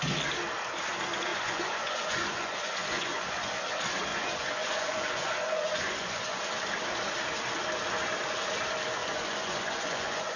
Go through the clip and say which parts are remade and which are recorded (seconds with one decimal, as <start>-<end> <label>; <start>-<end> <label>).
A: 0.0-1.3 recorded; 1.3-3.5 remade; 3.5-4.1 recorded; 4.1-6.4 remade; 6.4-9.0 recorded; 9.0-10.4 remade